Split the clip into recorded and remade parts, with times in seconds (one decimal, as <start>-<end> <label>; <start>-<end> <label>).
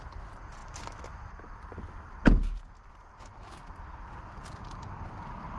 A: 0.0-5.6 recorded